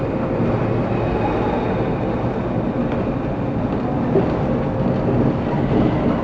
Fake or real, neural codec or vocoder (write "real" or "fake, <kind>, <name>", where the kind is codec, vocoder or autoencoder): real